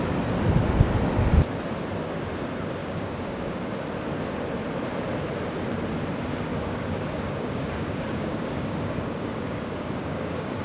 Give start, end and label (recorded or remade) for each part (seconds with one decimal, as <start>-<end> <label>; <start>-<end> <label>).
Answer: 0.0-2.8 recorded; 2.8-3.7 remade; 3.7-6.5 recorded; 6.5-10.6 remade